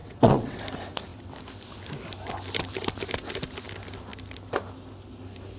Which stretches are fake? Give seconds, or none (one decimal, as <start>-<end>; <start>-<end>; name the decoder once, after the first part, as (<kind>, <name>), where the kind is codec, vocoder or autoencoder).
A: 0.0-0.6 (vocoder, WaveNeXt)